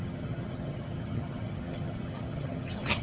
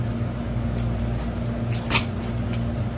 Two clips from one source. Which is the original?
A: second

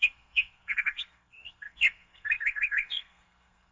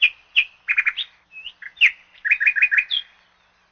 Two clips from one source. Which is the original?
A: second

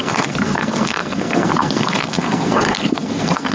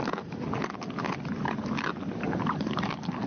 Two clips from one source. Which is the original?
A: second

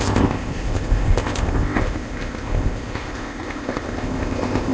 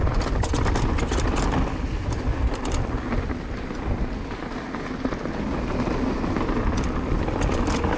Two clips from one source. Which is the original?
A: second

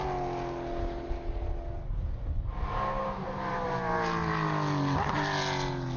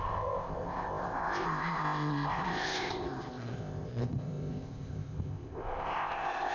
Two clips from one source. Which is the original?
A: first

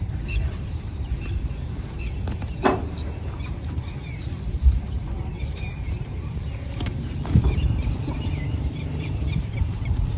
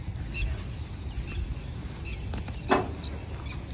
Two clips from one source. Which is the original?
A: second